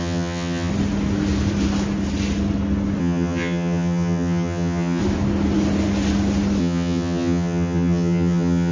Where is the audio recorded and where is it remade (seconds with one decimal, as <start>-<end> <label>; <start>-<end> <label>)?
0.0-0.7 remade; 0.7-3.0 recorded; 3.0-5.0 remade; 5.0-6.6 recorded; 6.6-8.7 remade